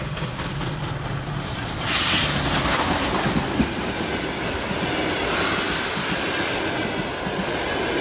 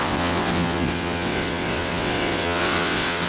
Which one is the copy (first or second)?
second